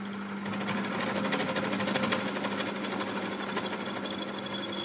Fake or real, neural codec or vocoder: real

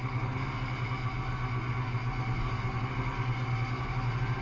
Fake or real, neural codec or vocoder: real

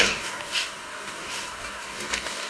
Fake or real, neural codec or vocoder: fake, codec, DAC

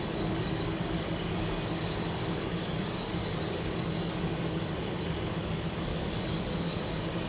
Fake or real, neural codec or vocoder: fake, codec, DAC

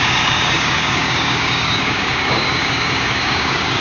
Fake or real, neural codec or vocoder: fake, codec, DAC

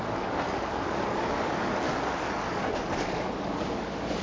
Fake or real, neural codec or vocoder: fake, codec, DAC